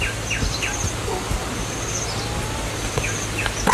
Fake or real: real